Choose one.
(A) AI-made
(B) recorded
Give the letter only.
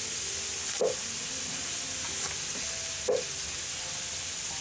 B